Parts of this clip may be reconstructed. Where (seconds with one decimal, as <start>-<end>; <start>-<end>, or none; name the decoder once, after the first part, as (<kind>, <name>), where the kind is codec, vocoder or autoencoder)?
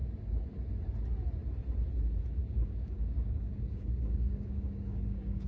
2.4-5.5 (codec, DAC)